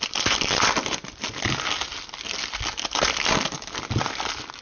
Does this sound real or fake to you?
real